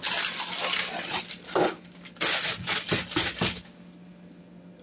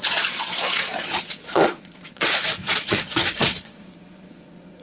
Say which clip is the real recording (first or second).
first